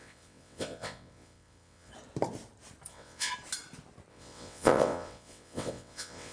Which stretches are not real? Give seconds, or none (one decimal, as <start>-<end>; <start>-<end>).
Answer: 0.0-1.9; 2.9-3.3; 4.1-6.3